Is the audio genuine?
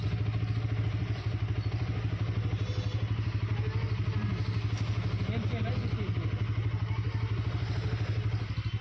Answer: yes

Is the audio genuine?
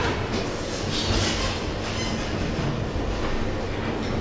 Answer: yes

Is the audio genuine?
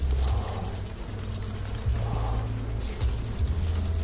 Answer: yes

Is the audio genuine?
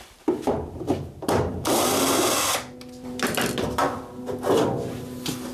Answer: no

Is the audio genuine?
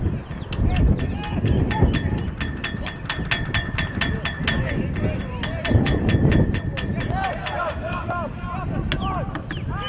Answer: yes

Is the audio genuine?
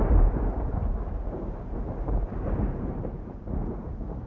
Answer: no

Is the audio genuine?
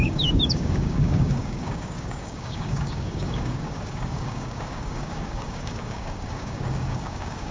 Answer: no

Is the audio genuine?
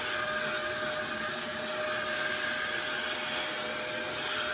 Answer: yes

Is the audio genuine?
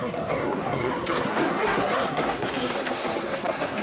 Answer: no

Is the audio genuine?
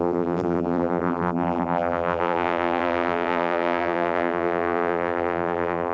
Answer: no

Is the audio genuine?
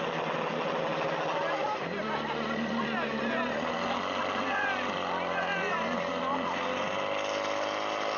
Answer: yes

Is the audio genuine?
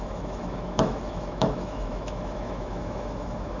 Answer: no